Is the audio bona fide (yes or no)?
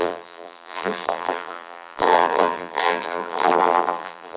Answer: no